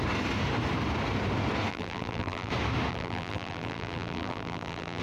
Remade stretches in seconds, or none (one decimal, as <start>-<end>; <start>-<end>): 1.7-2.5; 2.9-5.0

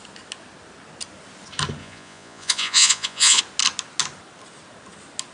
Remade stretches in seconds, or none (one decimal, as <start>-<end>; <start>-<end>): 1.8-3.4

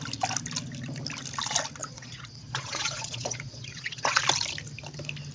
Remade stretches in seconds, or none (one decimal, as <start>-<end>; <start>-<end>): 1.8-4.2

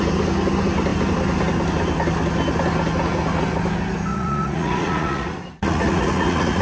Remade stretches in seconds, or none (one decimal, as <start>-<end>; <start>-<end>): 4.1-6.6